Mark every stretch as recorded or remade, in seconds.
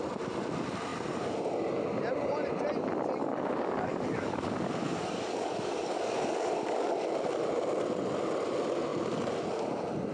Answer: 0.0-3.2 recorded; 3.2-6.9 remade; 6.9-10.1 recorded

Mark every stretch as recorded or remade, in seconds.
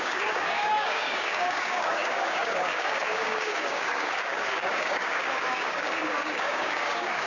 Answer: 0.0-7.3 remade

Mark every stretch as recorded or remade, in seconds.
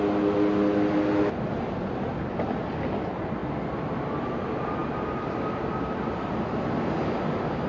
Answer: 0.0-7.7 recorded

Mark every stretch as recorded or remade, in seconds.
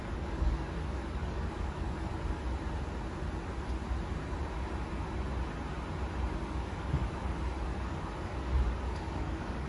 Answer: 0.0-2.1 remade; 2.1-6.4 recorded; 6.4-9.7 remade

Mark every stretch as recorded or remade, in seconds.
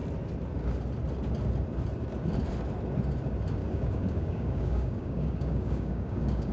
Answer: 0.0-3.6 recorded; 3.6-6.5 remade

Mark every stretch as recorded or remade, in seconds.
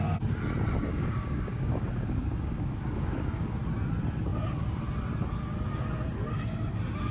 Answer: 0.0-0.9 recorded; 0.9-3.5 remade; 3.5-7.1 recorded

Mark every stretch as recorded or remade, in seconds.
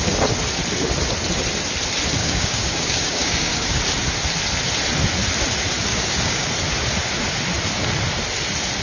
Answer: 0.0-2.2 recorded; 2.2-3.8 remade; 3.8-5.9 recorded; 5.9-6.5 remade; 6.5-8.8 recorded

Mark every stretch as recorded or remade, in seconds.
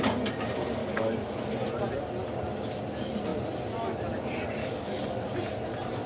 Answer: 0.0-0.8 recorded; 0.8-1.5 remade; 1.5-4.6 recorded; 4.6-5.4 remade; 5.4-6.1 recorded